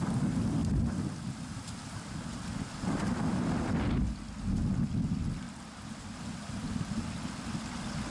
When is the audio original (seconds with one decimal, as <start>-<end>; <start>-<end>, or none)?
0.0-8.1